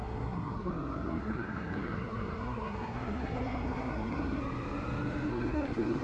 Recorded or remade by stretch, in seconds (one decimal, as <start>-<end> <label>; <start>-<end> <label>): 0.0-4.4 remade; 4.4-5.3 recorded; 5.3-6.0 remade